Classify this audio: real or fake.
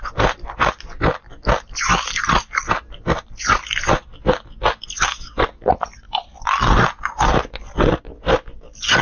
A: real